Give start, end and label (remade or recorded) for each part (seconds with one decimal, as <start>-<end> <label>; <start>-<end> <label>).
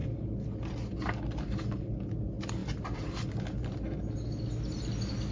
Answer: 0.0-5.3 recorded